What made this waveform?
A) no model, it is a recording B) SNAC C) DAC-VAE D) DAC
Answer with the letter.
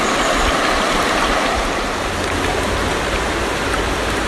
A